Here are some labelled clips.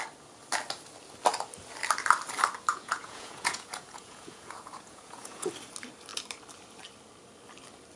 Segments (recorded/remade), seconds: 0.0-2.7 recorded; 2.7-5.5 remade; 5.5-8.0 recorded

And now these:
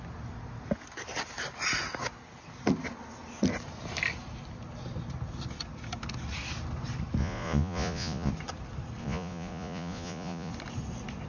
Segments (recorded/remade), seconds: 0.0-7.2 recorded; 7.2-8.3 remade; 8.3-9.0 recorded; 9.0-10.5 remade; 10.5-11.3 recorded

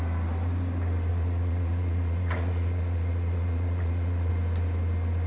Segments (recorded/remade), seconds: 0.0-1.1 recorded; 1.1-4.3 remade; 4.3-5.3 recorded

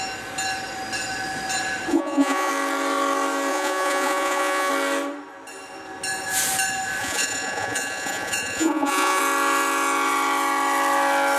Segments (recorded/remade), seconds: 0.0-1.9 recorded; 1.9-2.5 remade; 2.5-3.5 recorded; 3.5-4.7 remade; 4.7-7.0 recorded; 7.0-9.2 remade; 9.2-11.4 recorded

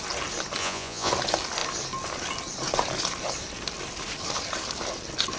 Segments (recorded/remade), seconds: 0.0-0.6 recorded; 0.6-1.1 remade; 1.1-5.4 recorded